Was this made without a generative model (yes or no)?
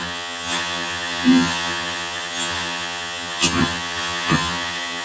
no